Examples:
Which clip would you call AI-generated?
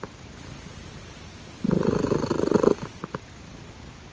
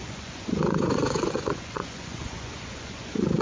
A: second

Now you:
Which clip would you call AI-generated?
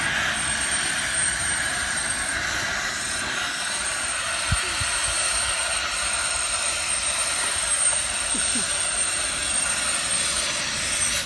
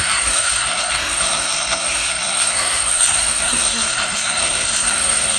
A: second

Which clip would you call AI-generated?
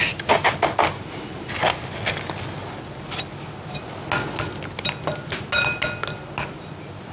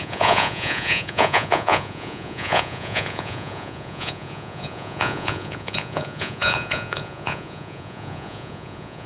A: second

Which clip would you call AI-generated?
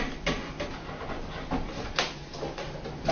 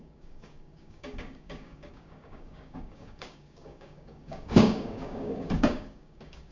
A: second